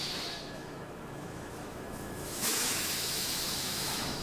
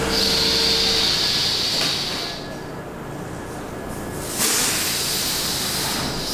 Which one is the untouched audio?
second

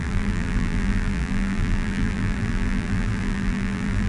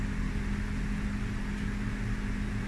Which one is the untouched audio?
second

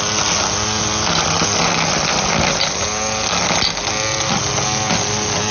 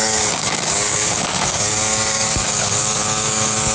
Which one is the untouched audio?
first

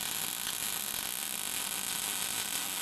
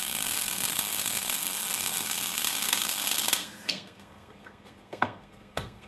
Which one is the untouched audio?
first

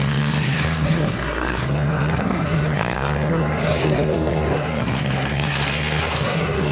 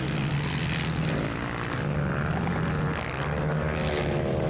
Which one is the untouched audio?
second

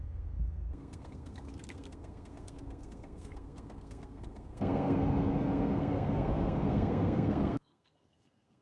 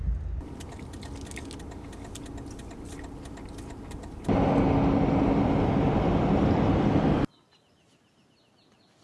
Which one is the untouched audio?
second